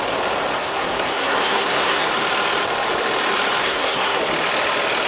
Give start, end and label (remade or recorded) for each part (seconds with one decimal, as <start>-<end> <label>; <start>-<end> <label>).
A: 0.0-0.6 recorded; 0.6-2.1 remade; 2.1-3.6 recorded; 3.6-4.2 remade; 4.2-5.1 recorded